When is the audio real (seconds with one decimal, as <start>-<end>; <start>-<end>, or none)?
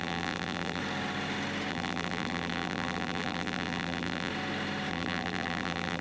0.8-1.7; 4.3-4.9